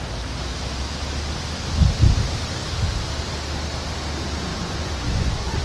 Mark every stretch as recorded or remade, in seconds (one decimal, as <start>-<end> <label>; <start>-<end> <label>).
0.0-4.5 recorded; 4.5-5.6 remade